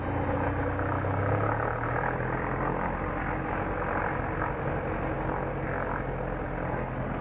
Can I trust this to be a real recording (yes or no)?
yes